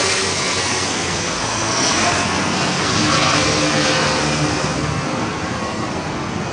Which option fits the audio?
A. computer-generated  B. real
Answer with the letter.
A